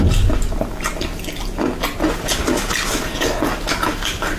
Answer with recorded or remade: recorded